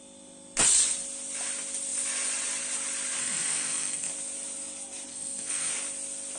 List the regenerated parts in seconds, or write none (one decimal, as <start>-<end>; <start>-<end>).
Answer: 3.2-4.1; 5.1-5.7